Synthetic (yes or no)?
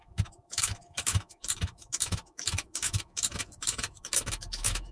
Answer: yes